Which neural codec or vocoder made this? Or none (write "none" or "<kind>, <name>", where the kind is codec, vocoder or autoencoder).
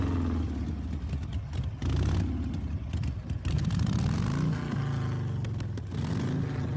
none